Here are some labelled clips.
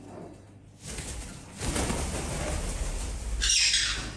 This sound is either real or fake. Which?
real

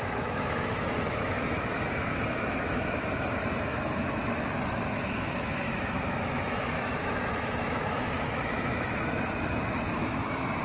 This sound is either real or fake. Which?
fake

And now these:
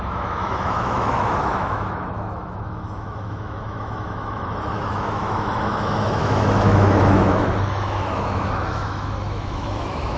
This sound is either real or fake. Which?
fake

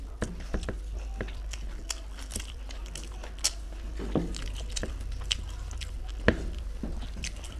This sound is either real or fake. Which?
real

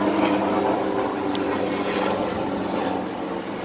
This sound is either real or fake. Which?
real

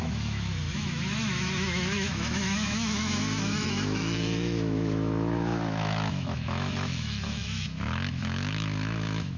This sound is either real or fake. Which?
fake